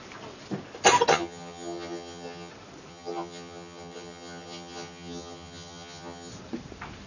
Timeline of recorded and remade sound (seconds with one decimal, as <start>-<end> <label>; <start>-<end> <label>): 0.0-1.1 recorded; 1.1-2.5 remade; 2.5-2.9 recorded; 2.9-6.3 remade; 6.3-7.1 recorded